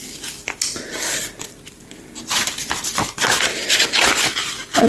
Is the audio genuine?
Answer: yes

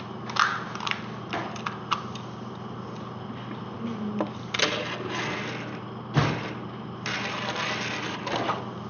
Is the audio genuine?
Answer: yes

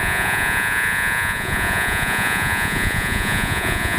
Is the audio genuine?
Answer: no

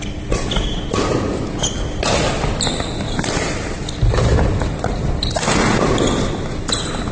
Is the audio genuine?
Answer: yes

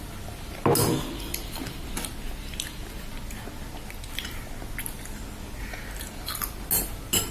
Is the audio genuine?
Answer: yes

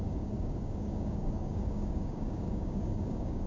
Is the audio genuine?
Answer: no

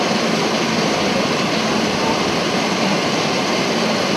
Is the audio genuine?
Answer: no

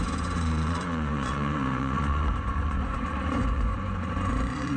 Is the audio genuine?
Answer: no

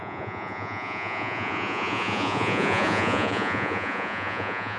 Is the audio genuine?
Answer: no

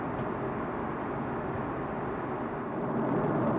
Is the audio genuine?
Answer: yes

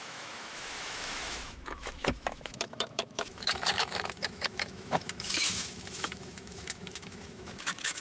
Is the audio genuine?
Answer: no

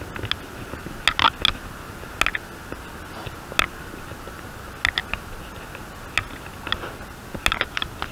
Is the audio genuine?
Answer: yes